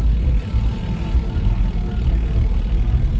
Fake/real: real